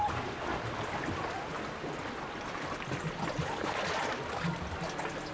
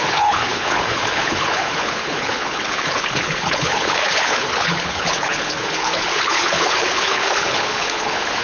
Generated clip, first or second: second